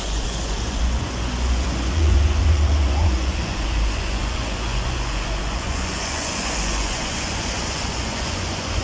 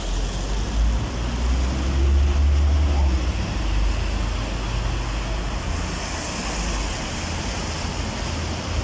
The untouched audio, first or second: second